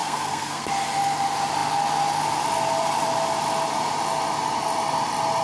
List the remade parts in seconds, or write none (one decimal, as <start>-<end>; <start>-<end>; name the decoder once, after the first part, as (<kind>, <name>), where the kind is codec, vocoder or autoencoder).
0.0-0.7 (codec, SNAC)